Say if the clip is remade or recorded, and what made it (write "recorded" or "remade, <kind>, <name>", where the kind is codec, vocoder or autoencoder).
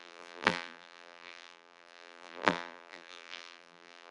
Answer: remade, vocoder, BigVGAN v2